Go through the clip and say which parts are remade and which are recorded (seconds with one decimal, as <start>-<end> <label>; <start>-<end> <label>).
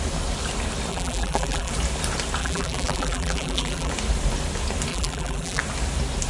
0.0-0.9 recorded; 0.9-1.7 remade; 1.7-2.4 recorded; 2.4-3.9 remade; 3.9-4.9 recorded; 4.9-5.6 remade; 5.6-6.3 recorded